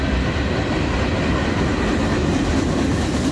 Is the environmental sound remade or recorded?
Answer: recorded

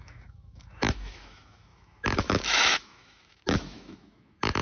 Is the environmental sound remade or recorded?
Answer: remade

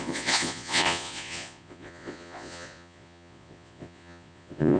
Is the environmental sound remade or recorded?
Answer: remade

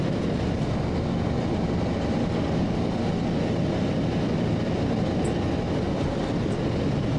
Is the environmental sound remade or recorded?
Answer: recorded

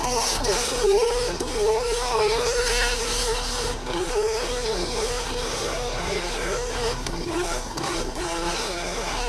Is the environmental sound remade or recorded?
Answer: remade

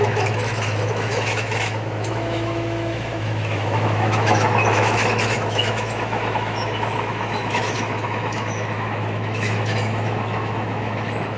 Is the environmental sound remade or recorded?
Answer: remade